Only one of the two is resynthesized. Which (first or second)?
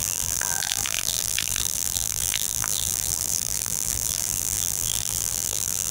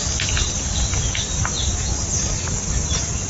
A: first